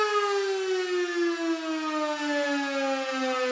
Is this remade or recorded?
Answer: recorded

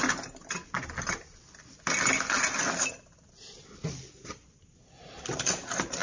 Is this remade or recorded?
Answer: recorded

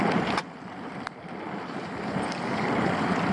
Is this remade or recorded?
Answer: remade